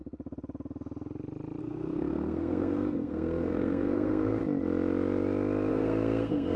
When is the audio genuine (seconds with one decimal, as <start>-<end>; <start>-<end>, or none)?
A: 0.0-1.6; 4.4-5.7

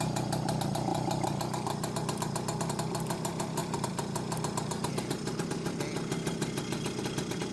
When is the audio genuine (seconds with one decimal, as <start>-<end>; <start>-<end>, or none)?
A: 0.0-7.5

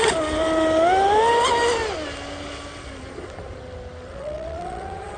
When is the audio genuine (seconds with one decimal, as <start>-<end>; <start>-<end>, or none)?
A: 0.0-4.1

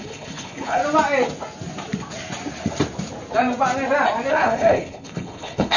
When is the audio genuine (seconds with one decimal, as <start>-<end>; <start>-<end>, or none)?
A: 0.8-4.3

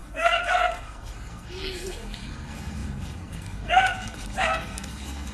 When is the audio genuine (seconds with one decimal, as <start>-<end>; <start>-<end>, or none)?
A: none

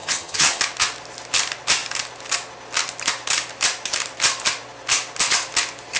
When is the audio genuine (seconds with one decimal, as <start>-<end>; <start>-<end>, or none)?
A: 0.6-6.0

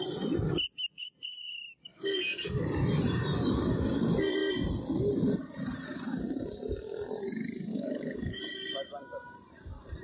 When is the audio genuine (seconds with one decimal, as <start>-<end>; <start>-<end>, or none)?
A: 0.0-1.9; 2.6-7.7; 8.4-10.0

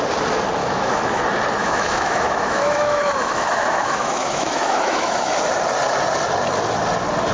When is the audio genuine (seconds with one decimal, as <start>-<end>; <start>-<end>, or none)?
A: 0.0-0.6; 1.2-1.6; 5.3-7.3